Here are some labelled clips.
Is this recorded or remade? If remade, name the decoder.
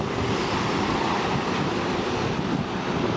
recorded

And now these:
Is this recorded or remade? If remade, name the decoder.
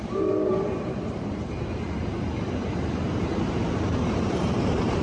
remade, vocoder, BigVGAN v2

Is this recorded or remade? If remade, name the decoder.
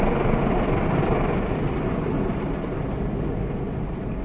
recorded